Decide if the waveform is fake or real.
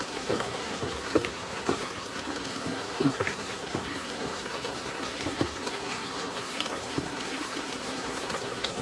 fake